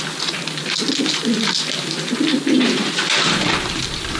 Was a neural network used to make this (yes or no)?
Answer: no